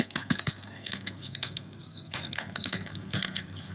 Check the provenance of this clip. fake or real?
fake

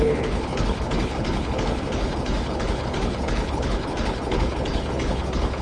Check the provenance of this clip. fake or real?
fake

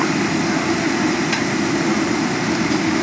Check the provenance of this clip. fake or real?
real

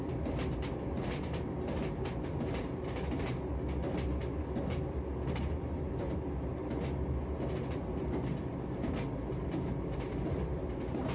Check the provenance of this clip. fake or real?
real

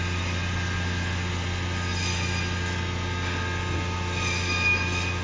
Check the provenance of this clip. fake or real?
real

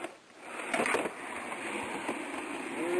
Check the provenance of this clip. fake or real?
real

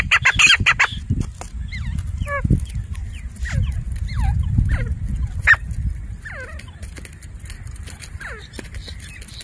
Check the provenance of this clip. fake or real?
real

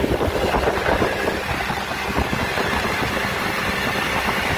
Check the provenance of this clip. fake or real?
real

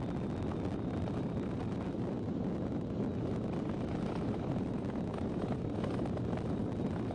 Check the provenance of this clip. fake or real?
real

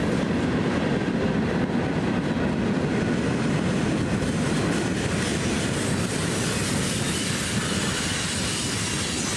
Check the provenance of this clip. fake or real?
real